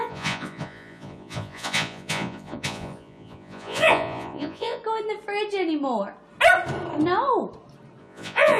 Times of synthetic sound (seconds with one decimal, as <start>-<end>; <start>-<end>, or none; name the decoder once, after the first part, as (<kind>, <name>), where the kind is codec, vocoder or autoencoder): 0.0-4.8 (vocoder, Vocos); 8.0-8.6